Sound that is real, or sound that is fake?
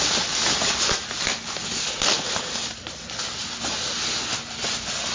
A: real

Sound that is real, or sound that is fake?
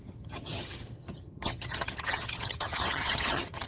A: fake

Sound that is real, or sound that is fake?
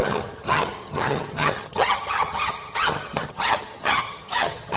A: fake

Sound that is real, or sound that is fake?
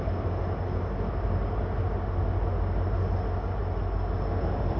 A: real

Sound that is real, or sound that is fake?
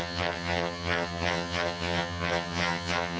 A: fake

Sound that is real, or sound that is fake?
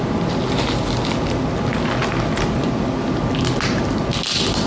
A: real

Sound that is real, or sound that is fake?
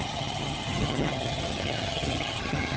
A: fake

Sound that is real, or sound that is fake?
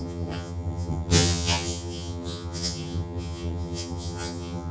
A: fake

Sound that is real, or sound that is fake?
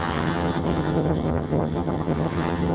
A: fake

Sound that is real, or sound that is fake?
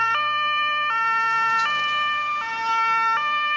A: real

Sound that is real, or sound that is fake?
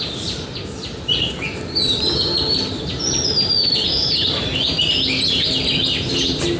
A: real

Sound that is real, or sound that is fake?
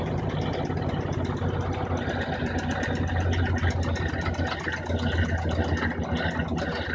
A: real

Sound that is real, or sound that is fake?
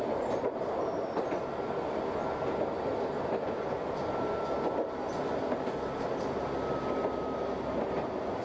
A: real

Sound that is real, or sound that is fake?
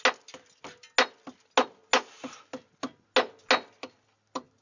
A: real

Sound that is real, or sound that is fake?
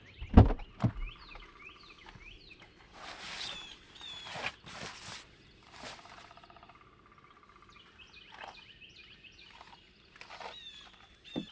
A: real